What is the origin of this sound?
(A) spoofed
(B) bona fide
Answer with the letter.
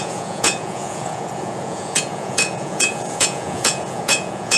A